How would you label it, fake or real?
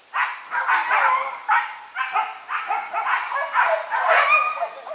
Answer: real